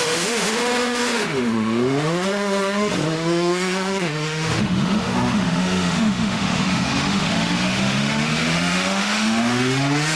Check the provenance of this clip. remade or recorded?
remade